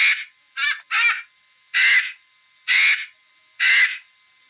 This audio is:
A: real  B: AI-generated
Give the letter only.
A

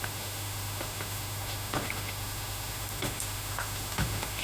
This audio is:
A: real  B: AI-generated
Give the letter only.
B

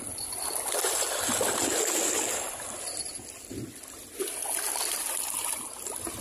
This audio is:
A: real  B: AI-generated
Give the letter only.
A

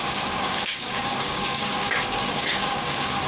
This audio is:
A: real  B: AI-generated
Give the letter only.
B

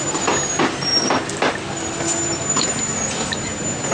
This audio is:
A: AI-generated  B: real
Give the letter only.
B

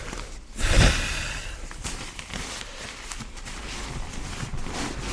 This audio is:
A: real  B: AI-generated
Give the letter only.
A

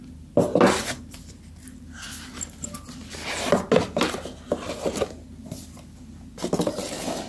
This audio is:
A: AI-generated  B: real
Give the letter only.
B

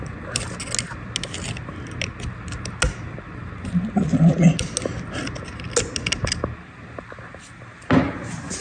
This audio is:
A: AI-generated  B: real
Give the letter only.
B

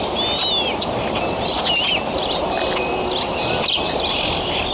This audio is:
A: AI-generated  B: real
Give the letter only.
B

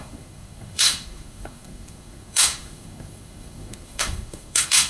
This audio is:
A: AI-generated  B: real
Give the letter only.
A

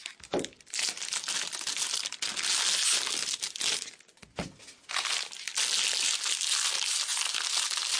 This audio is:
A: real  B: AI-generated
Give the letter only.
A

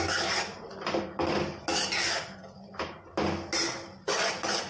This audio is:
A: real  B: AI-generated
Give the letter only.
A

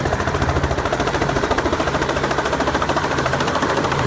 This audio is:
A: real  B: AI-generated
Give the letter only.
B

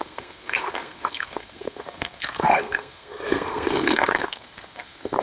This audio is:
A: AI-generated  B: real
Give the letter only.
A